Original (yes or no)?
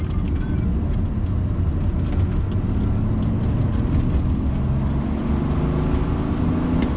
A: yes